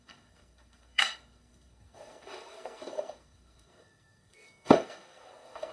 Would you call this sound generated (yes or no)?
yes